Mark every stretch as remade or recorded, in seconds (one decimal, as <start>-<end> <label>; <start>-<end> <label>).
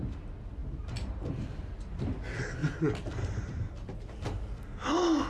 0.0-0.6 recorded; 0.6-2.0 remade; 2.0-2.6 recorded; 2.6-4.4 remade; 4.4-5.3 recorded